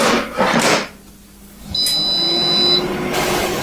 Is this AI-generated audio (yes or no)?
no